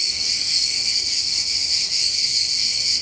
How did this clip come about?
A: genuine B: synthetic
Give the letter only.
B